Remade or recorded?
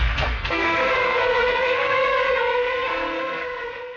remade